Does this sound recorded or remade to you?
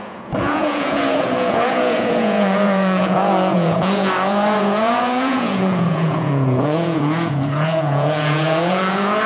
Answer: remade